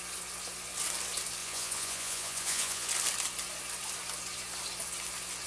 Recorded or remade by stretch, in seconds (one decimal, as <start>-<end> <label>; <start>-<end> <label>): 0.0-1.4 recorded; 1.4-2.9 remade; 2.9-5.5 recorded